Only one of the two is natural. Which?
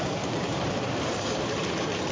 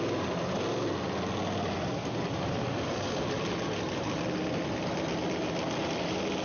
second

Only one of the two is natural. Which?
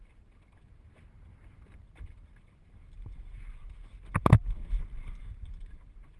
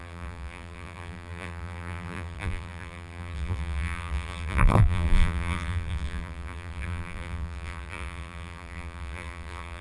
first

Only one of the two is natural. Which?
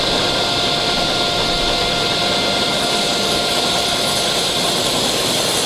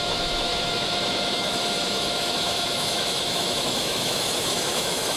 first